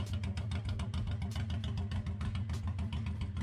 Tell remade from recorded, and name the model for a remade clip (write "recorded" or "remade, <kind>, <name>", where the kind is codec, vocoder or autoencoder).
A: recorded